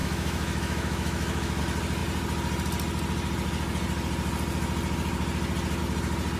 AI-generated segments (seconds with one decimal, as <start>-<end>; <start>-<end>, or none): 0.0-1.6